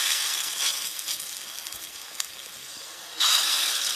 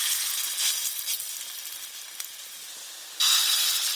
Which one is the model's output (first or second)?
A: first